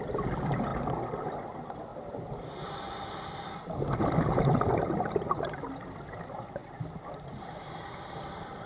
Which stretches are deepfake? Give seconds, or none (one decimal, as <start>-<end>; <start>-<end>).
0.0-0.7; 1.3-1.9; 2.9-6.6; 7.1-8.7